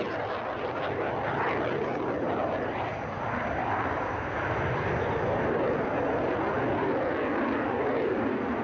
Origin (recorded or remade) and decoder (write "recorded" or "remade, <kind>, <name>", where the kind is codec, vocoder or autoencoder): recorded